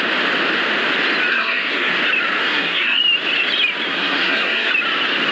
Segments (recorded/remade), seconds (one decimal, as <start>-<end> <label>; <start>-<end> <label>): 0.0-1.3 recorded; 1.3-1.9 remade; 1.9-2.4 recorded; 2.4-3.0 remade; 3.0-3.9 recorded; 3.9-4.7 remade; 4.7-5.3 recorded